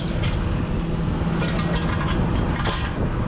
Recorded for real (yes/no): yes